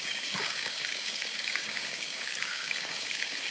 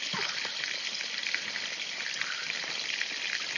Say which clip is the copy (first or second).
first